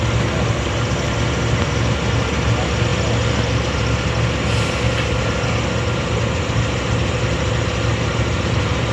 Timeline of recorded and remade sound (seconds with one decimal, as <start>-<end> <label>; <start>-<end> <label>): 0.0-8.9 recorded